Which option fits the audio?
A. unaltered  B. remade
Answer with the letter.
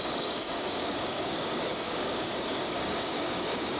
B